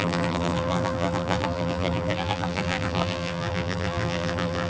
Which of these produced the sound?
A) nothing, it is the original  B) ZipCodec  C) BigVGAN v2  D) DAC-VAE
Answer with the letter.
C